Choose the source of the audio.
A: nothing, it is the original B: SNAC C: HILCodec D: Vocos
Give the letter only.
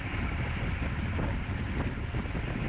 A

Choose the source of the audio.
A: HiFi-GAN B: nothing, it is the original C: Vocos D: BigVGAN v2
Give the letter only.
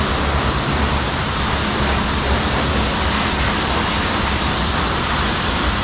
B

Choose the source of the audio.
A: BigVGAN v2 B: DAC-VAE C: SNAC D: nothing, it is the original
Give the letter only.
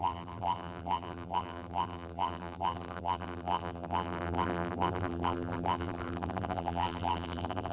A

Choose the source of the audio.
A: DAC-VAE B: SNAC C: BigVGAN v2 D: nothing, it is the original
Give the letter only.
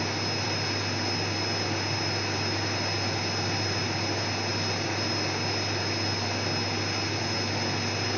D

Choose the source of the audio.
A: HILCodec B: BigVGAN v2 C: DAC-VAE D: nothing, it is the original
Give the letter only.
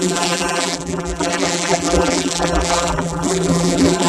B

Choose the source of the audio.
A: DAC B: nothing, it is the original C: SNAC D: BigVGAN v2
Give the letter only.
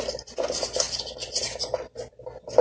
B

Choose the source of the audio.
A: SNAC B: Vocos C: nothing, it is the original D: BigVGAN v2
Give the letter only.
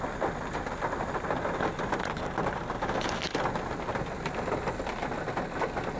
C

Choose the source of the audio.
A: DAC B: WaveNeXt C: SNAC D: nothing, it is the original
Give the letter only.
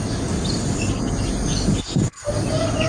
D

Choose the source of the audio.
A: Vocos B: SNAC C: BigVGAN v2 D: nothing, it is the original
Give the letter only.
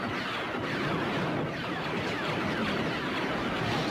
D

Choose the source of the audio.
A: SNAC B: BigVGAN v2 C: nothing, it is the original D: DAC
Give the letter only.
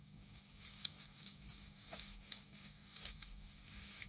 D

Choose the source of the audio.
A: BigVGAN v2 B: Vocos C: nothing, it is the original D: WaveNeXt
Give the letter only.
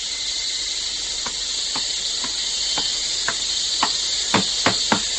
C